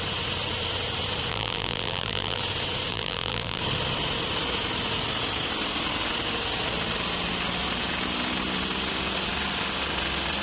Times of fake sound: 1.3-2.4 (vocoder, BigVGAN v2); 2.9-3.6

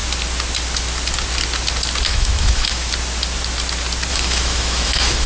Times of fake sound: 2.1-2.9 (autoencoder, DAC-VAE); 4.1-5.3

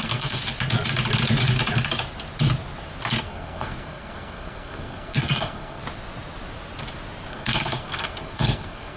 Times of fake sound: 0.0-0.4 (codec, SNAC); 3.2-5.8; 7.3-9.0

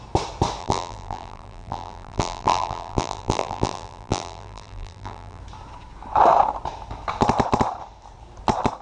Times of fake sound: 0.6-5.4 (vocoder, BigVGAN v2)

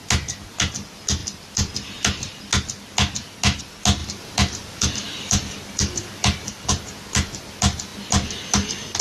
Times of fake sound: 4.0-6.7 (vocoder, BigVGAN v2)

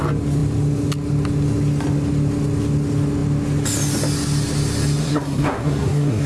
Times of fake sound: 5.0-6.3 (codec, SNAC)